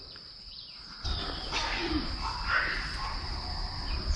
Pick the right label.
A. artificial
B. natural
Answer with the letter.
B